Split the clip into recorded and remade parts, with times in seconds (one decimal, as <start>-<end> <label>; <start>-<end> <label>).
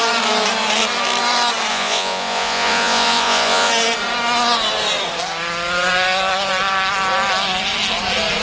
0.0-1.7 recorded; 1.7-3.7 remade; 3.7-8.4 recorded